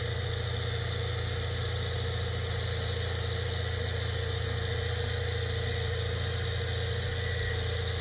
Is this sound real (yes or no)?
yes